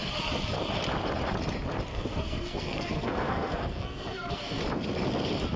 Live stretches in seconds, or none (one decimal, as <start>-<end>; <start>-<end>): 0.0-1.9; 4.6-5.6